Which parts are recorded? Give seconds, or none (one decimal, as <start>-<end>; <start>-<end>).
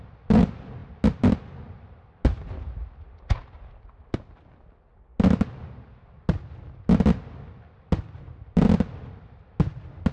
0.0-10.1